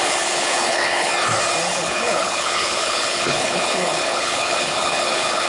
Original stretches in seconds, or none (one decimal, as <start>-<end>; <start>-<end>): 1.1-1.7